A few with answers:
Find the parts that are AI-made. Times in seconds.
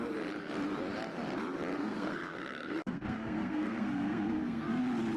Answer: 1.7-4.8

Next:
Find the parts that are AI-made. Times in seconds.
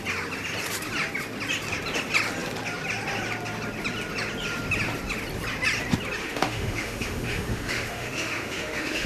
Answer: 6.2-9.1